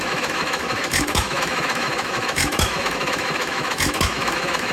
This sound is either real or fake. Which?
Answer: fake